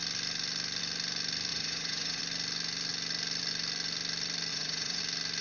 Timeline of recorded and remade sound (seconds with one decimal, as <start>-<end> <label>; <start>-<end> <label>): 0.0-1.5 recorded; 1.5-2.2 remade; 2.2-4.5 recorded; 4.5-5.0 remade; 5.0-5.4 recorded